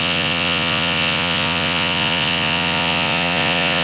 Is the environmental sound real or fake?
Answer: fake